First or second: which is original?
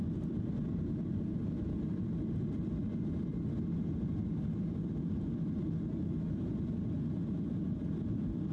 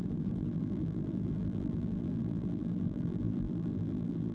first